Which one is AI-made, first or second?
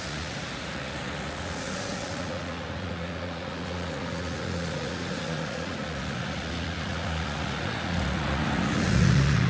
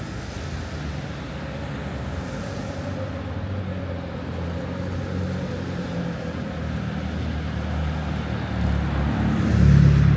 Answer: first